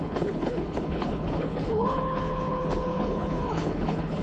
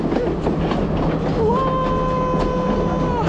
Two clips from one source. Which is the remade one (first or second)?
first